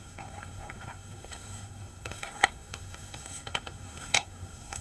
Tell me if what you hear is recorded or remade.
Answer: remade